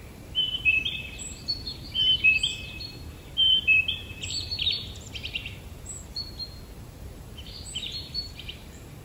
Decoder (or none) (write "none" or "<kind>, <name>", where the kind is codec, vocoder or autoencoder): vocoder, BigVGAN v2